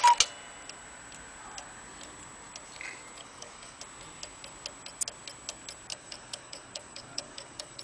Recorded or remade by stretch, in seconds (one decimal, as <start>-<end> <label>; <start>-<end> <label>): 0.0-3.2 recorded; 3.2-3.8 remade; 3.8-5.9 recorded; 5.9-7.8 remade